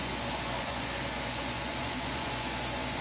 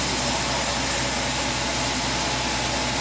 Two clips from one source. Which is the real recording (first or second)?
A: second